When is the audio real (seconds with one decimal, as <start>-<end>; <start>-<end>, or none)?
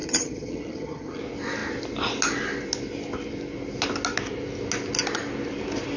1.2-6.0